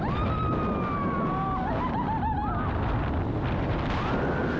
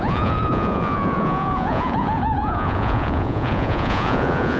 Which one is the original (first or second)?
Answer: first